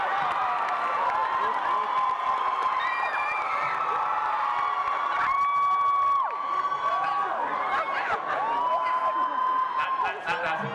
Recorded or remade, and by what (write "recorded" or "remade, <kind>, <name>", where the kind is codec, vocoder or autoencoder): recorded